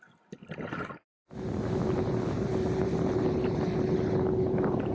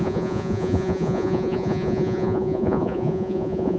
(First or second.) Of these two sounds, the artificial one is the second